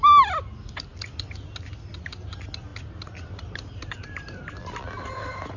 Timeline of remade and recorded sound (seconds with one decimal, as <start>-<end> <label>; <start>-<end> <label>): 0.0-5.6 recorded